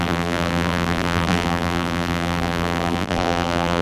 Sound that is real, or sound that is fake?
fake